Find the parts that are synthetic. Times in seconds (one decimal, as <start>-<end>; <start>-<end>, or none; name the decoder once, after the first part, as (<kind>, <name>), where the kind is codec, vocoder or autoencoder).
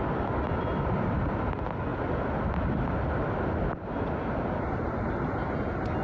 none